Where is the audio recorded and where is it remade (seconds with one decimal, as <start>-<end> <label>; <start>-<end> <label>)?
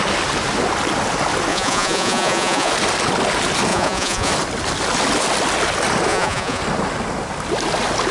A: 0.0-1.5 recorded; 1.5-2.7 remade; 2.7-3.7 recorded; 3.7-4.3 remade; 4.3-6.1 recorded; 6.1-6.6 remade; 6.6-8.1 recorded